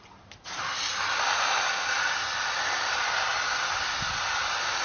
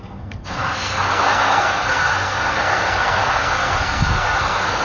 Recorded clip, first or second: first